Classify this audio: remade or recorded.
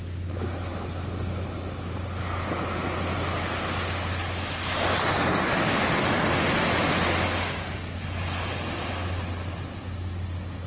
recorded